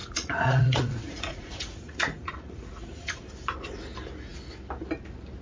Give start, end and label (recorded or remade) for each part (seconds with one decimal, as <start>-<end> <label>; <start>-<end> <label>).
0.0-3.2 remade; 3.2-5.4 recorded